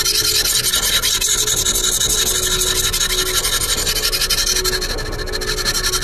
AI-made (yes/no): no